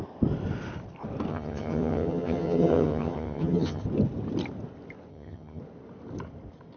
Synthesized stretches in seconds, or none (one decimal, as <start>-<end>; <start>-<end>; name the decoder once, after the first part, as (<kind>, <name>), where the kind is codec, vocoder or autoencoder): 1.3-3.8 (vocoder, HiFi-GAN); 5.1-5.6